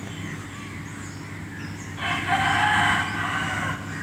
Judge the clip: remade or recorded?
recorded